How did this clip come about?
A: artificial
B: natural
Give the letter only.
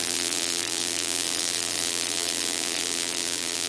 A